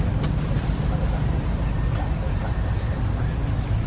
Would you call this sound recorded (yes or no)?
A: yes